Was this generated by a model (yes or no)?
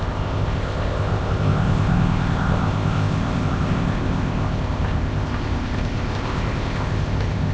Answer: yes